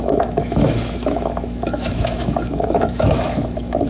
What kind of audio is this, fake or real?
fake